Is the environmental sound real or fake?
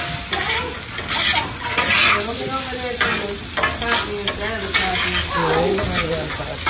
real